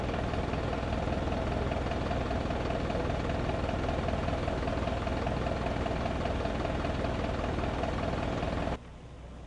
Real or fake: real